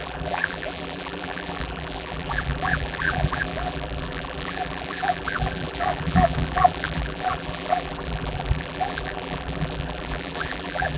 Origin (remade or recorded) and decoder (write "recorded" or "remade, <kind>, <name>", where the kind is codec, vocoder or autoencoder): remade, vocoder, BigVGAN v2